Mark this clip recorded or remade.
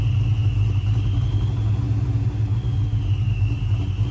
recorded